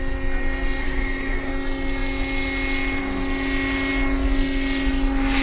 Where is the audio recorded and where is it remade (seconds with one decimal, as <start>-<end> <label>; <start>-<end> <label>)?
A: 0.0-0.8 recorded; 0.8-1.5 remade; 1.5-5.4 recorded